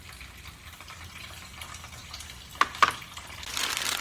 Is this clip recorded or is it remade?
recorded